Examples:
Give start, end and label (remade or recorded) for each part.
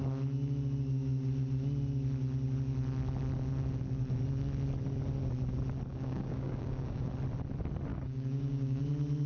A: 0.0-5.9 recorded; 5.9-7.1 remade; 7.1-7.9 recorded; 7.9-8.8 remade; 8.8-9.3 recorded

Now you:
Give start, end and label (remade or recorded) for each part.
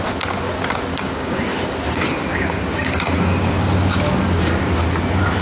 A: 0.0-0.9 recorded; 0.9-1.6 remade; 1.6-2.3 recorded; 2.3-3.5 remade; 3.5-5.4 recorded